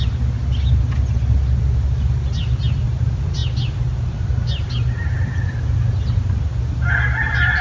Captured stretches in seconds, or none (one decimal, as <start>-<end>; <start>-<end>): 0.0-7.6